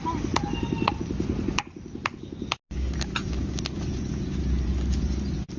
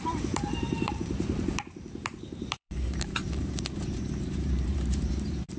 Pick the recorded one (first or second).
first